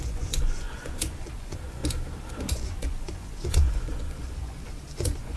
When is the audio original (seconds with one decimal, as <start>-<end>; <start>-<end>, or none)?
1.8-2.5